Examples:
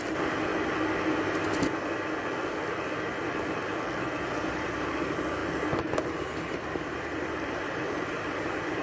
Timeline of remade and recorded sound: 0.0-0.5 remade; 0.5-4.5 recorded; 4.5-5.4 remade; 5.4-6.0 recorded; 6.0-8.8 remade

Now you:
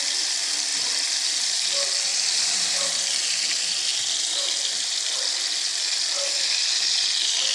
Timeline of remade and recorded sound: 0.0-2.1 recorded; 2.1-3.3 remade; 3.3-3.9 recorded; 3.9-4.8 remade; 4.8-7.5 recorded

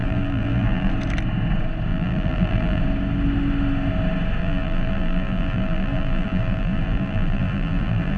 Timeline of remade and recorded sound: 0.0-0.9 remade; 0.9-1.9 recorded; 1.9-2.8 remade; 2.8-4.4 recorded; 4.4-8.2 remade

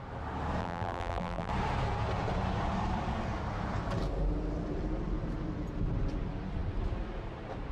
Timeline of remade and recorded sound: 0.0-0.6 recorded; 0.6-1.5 remade; 1.5-7.7 recorded

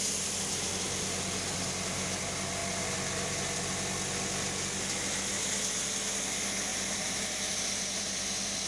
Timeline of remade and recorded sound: 0.0-6.7 recorded; 6.7-8.2 remade; 8.2-8.7 recorded

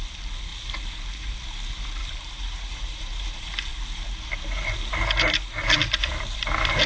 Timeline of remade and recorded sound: 0.0-2.0 recorded; 2.0-3.3 remade; 3.3-6.9 recorded

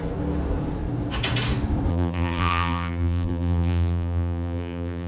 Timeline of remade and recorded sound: 0.0-1.9 recorded; 1.9-5.1 remade

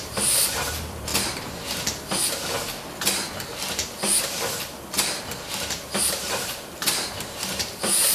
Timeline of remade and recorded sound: 0.0-1.1 remade; 1.1-6.0 recorded; 6.0-8.1 remade